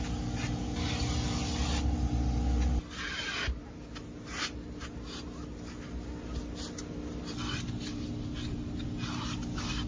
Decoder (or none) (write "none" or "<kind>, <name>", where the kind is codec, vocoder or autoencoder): none